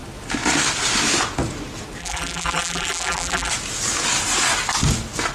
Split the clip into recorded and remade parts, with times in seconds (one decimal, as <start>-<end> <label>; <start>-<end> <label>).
0.0-2.0 recorded; 2.0-3.5 remade; 3.5-5.3 recorded